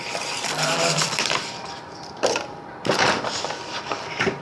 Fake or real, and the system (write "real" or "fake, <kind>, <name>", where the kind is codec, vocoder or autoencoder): fake, vocoder, BigVGAN v2